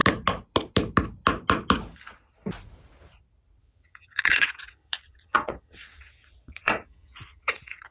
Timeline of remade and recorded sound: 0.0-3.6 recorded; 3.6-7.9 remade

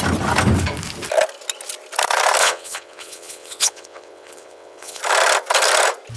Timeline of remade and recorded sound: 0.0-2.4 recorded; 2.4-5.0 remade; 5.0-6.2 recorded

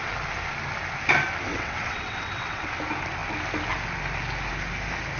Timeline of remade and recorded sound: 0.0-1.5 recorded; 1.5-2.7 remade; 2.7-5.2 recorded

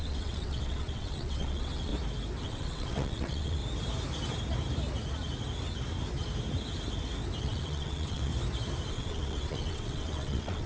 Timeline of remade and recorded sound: 0.0-1.9 remade; 1.9-2.4 recorded; 2.4-3.6 remade; 3.6-7.4 recorded; 7.4-8.3 remade; 8.3-8.9 recorded; 8.9-10.7 remade

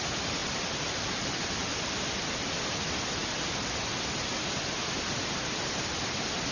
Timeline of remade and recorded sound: 0.0-6.5 recorded

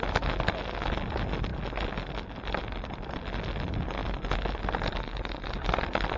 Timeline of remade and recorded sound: 0.0-6.2 recorded